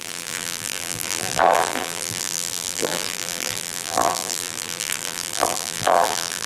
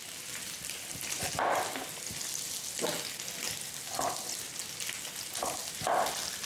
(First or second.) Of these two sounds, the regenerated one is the first